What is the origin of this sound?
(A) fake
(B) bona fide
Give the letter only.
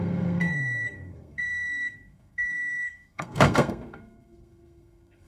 A